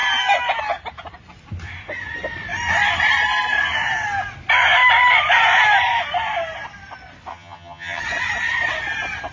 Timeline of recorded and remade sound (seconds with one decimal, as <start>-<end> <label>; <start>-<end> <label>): 0.0-7.3 recorded; 7.3-8.0 remade; 8.0-9.3 recorded